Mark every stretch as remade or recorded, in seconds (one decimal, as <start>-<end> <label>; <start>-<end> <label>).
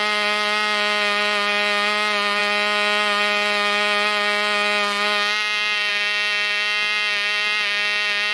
0.0-8.3 recorded